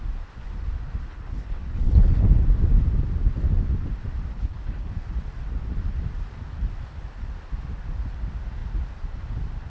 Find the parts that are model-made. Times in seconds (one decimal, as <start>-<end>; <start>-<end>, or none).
1.0-2.2; 4.3-4.9